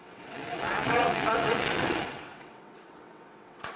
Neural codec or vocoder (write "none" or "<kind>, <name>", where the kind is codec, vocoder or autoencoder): vocoder, WaveNeXt